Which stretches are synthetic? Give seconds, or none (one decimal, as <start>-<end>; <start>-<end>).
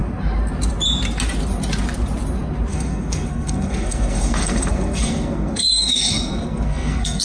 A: 2.7-7.2